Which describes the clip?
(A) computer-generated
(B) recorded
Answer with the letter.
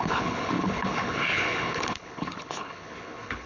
A